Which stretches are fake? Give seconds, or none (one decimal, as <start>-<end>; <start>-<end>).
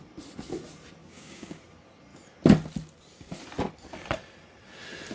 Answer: 1.0-1.6